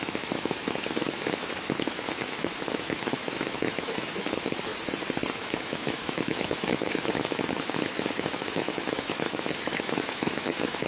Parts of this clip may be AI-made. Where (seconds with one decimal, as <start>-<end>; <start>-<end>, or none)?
0.0-4.7; 5.4-10.9